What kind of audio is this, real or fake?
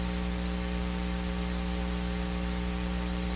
fake